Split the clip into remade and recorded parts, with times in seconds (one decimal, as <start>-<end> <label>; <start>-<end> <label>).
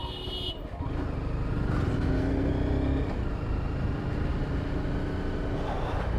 0.0-1.9 recorded; 1.9-2.5 remade; 2.5-6.2 recorded